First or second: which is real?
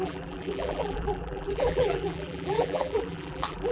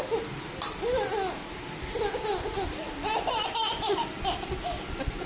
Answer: second